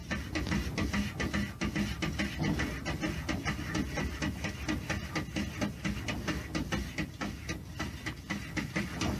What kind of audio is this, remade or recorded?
recorded